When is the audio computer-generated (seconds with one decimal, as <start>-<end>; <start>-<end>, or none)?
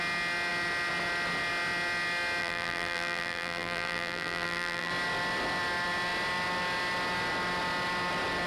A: 2.4-4.9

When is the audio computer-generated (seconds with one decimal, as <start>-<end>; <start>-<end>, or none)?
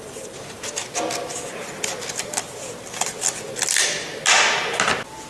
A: none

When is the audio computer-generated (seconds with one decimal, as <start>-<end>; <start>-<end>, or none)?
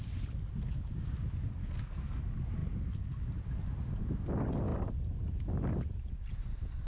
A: 1.6-2.2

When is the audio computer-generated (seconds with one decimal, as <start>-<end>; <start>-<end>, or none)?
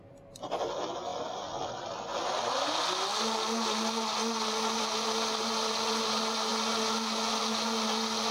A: none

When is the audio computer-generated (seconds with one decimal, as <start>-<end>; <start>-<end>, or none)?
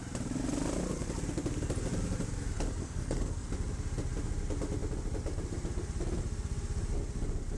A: 2.8-3.5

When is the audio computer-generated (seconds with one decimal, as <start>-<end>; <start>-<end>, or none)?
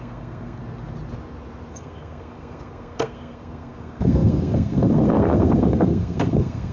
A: 0.0-0.6; 1.7-6.7